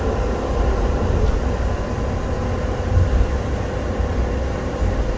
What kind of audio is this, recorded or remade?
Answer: recorded